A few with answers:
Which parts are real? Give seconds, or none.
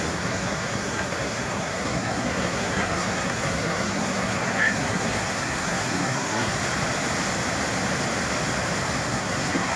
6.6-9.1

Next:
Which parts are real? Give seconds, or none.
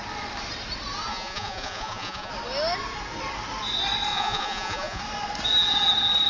0.0-1.1; 2.3-4.1; 5.0-6.3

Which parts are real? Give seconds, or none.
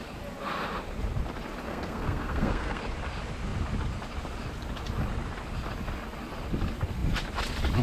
0.0-1.7; 2.8-7.8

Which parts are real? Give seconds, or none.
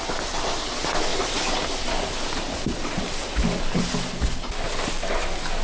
0.0-5.6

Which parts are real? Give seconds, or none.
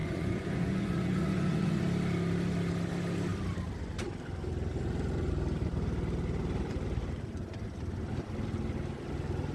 1.8-9.5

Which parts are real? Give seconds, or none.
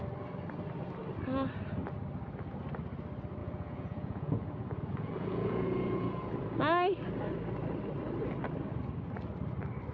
0.0-3.4; 6.3-9.9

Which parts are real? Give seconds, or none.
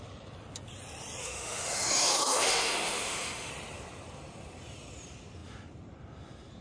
0.0-1.2; 3.5-6.6